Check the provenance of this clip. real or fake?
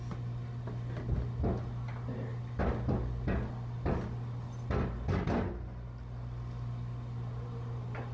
real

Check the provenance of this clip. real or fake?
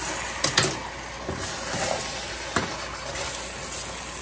real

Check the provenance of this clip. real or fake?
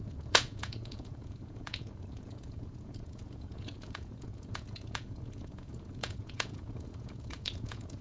fake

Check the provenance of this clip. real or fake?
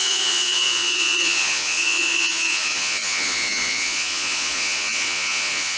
fake